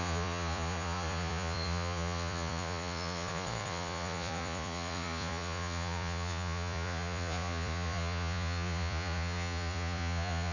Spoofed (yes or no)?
yes